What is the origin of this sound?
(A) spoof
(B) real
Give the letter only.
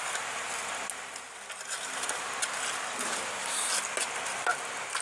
B